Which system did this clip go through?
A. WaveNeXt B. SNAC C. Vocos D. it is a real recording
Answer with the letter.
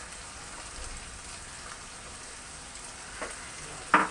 D